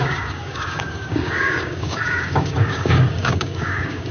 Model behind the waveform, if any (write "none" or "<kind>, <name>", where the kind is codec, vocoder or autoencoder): codec, DAC